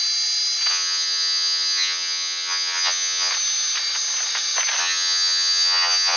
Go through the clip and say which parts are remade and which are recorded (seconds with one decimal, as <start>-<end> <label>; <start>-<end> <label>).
0.0-0.7 recorded; 0.7-3.3 remade; 3.3-4.8 recorded; 4.8-6.2 remade